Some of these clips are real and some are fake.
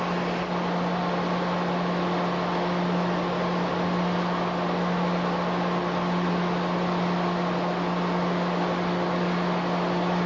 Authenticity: real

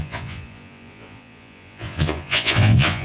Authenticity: fake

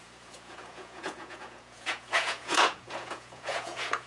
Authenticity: fake